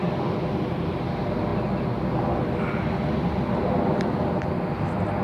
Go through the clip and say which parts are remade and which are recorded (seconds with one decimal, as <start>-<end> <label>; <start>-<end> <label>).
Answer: 0.0-0.6 recorded; 0.6-1.5 remade; 1.5-4.5 recorded; 4.5-5.2 remade